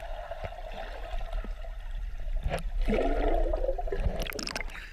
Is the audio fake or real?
real